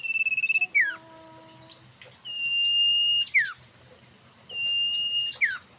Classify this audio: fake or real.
real